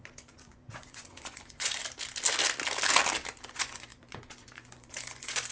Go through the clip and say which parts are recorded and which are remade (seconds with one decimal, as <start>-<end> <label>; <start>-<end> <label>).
0.0-1.8 remade; 1.8-3.5 recorded; 3.5-5.5 remade